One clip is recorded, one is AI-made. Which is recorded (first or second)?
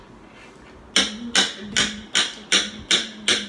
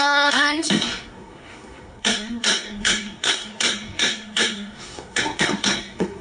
first